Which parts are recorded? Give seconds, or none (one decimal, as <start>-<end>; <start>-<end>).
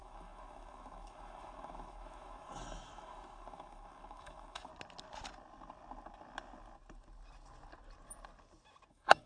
4.7-8.9